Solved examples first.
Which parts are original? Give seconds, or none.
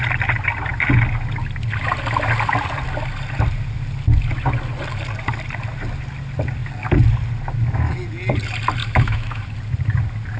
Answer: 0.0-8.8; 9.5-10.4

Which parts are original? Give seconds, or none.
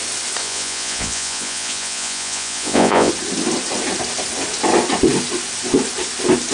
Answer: 0.0-0.4; 3.1-6.5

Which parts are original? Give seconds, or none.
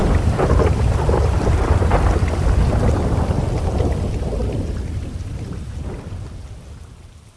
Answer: 3.0-4.4; 5.3-7.4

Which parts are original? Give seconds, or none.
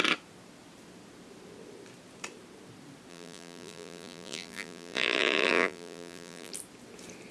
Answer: 0.0-3.1; 6.5-7.3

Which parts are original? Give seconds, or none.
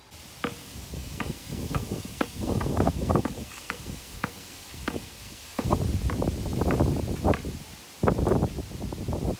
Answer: 0.0-0.6; 5.8-9.4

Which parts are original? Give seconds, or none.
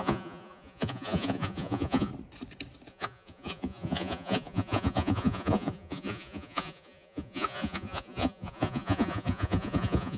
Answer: 2.1-2.9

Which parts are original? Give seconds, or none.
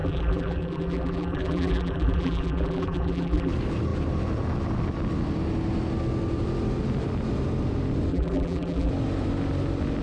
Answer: 3.5-8.1; 8.9-10.0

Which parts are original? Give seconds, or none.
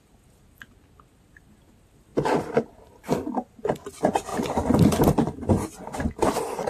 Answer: 0.0-6.7